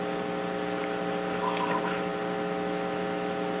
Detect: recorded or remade recorded